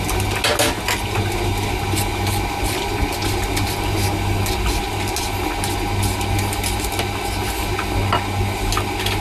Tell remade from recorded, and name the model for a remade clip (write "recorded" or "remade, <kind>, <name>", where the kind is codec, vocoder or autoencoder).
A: recorded